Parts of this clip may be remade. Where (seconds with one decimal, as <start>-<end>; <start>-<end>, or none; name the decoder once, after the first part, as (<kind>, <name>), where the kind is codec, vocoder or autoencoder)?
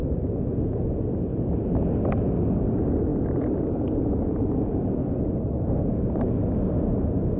none